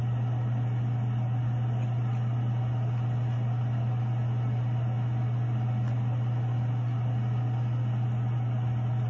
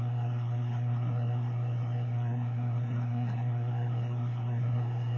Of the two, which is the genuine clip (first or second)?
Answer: first